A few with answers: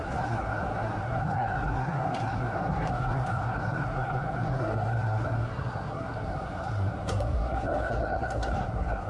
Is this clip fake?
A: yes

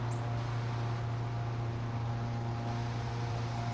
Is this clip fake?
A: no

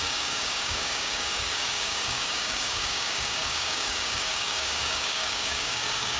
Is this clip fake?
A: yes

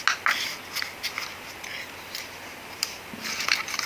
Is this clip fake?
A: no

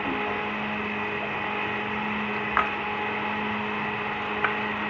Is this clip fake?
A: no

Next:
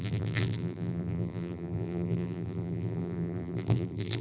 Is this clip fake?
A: yes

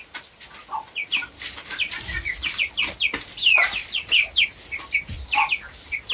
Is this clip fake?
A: no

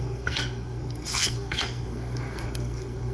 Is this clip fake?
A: yes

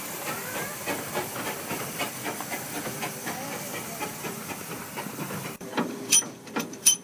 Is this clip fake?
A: yes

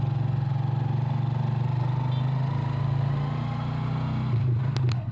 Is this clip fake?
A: no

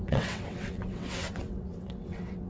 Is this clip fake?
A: yes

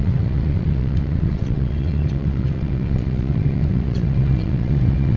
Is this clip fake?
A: yes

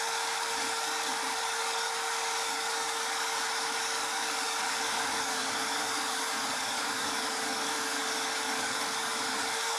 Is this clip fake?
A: yes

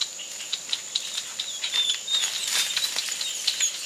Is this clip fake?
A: no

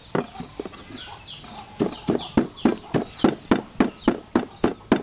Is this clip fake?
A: no